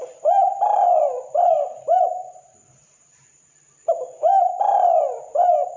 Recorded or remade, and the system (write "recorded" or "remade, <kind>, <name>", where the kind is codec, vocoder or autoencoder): remade, vocoder, BigVGAN v2